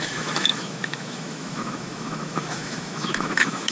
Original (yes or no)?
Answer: no